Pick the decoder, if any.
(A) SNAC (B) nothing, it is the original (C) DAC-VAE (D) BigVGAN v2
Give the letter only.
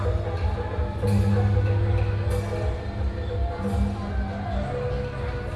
B